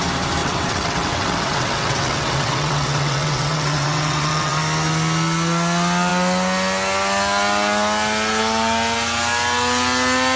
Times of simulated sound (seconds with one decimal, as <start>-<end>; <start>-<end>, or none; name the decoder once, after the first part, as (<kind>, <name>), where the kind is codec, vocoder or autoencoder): 0.4-4.6 (vocoder, WaveNeXt)